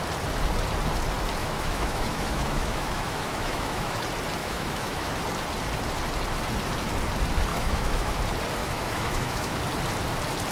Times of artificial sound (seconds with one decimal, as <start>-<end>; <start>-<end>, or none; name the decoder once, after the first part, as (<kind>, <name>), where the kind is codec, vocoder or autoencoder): 1.4-4.0 (autoencoder, DAC-VAE); 4.4-5.1; 7.5-8.2; 8.6-9.6